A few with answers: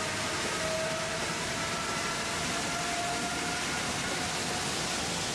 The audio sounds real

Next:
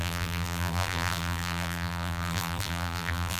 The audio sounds fake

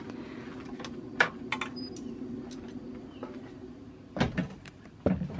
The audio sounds real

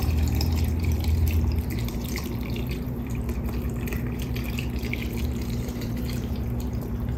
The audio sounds fake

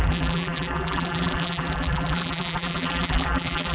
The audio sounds fake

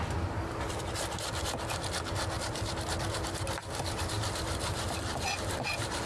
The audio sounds fake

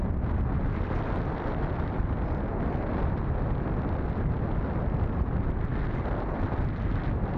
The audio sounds real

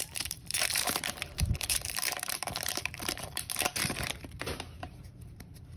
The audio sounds fake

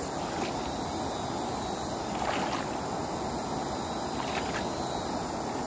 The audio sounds real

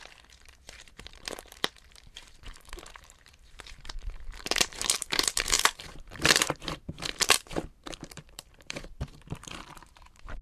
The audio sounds fake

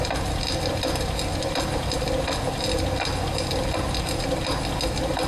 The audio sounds real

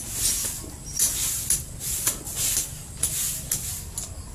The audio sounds real